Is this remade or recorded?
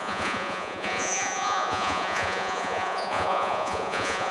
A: remade